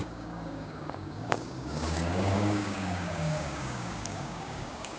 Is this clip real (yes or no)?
no